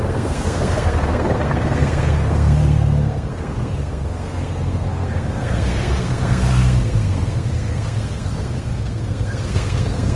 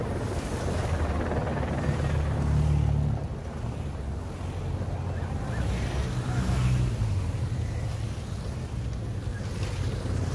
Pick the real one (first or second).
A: second